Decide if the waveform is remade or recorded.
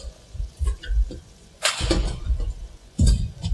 remade